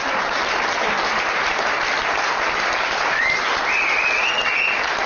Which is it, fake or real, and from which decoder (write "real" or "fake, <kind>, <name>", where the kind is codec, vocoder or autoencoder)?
real